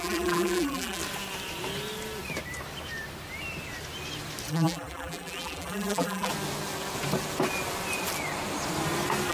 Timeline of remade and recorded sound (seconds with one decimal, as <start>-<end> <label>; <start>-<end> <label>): 0.0-1.0 remade; 1.0-4.5 recorded; 4.5-6.3 remade; 6.3-9.3 recorded